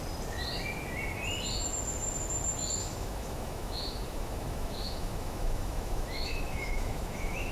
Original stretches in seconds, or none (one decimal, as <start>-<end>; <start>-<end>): 0.0-2.8